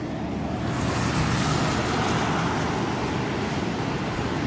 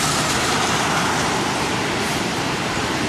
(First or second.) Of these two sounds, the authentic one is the first